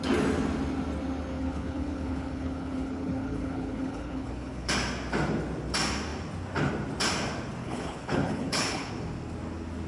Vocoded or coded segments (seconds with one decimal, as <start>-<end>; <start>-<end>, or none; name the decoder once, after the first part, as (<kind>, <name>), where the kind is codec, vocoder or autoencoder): 1.3-4.7 (codec, HILCodec); 7.6-8.9